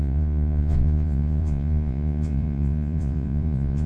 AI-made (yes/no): yes